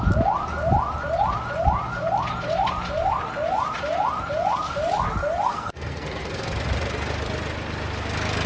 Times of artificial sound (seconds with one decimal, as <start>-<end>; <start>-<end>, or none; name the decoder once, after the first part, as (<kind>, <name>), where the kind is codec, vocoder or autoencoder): 5.5-6.5 (codec, SNAC)